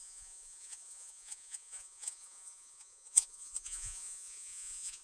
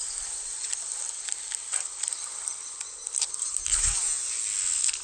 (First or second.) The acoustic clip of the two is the second